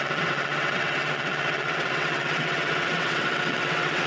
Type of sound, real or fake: fake